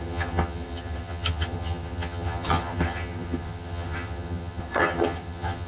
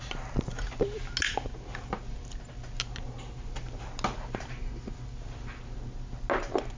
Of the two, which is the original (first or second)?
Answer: second